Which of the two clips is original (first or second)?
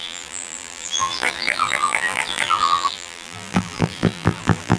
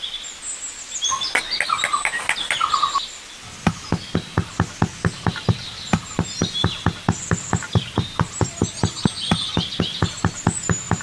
second